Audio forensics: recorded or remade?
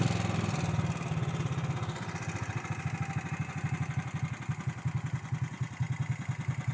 recorded